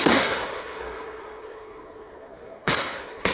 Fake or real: fake